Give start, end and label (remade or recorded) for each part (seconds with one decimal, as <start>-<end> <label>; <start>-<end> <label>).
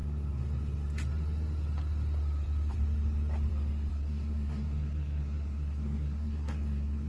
0.0-3.9 recorded; 3.9-7.1 remade